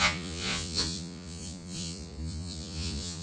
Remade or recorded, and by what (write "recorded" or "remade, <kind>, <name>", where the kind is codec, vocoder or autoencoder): remade, vocoder, Vocos